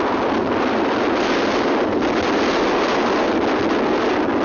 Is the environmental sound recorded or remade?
recorded